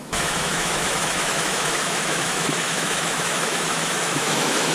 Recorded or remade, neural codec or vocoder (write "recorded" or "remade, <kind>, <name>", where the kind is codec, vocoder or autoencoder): remade, autoencoder, DAC-VAE